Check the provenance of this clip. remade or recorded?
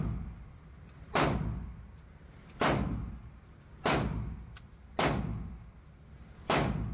recorded